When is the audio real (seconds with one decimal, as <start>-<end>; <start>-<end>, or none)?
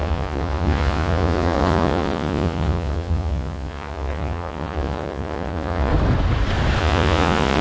5.9-6.8